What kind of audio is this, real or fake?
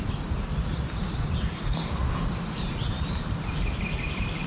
real